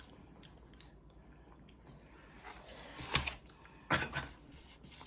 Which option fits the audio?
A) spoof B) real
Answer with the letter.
B